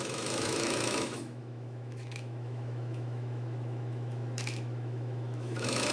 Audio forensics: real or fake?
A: fake